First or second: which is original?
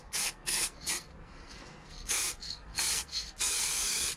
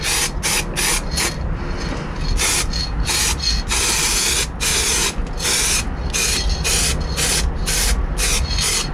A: second